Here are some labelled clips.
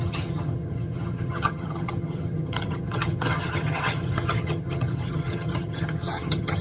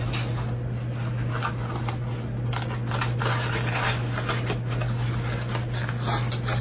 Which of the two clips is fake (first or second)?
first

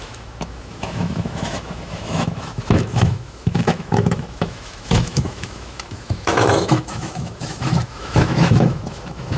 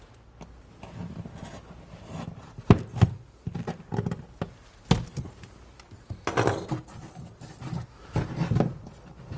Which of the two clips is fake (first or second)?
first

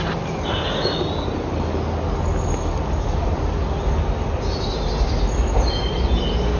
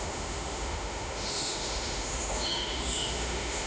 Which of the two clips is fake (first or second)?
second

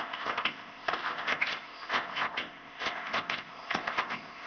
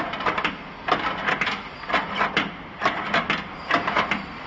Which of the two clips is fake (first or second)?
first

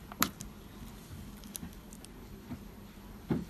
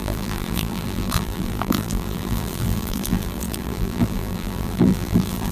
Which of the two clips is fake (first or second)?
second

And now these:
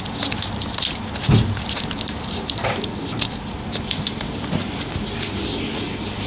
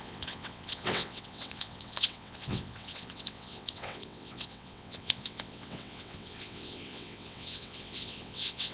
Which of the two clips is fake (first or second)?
second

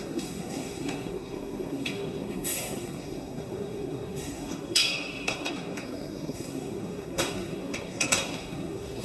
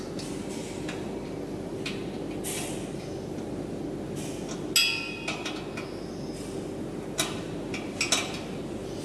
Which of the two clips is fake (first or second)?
first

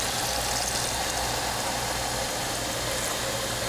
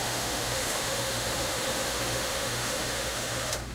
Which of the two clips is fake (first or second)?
second